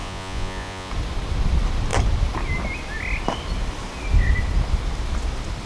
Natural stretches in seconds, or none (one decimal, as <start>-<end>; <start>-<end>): 0.9-5.7